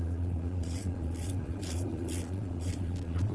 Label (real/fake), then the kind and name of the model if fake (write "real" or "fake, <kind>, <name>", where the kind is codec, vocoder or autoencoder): fake, vocoder, Vocos